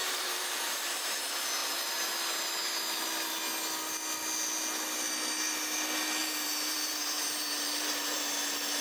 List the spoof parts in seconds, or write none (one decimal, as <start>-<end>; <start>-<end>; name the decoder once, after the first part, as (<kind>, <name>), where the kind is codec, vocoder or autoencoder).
0.0-1.2 (vocoder, BigVGAN v2); 6.2-8.2